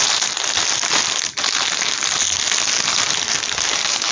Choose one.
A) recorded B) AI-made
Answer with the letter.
A